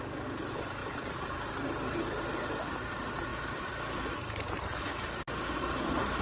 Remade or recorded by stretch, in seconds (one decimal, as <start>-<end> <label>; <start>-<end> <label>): 0.0-6.2 recorded